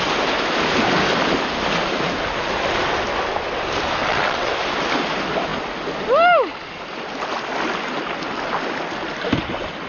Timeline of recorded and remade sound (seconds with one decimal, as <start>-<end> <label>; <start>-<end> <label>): 0.0-4.0 recorded; 4.0-4.5 remade; 4.5-9.9 recorded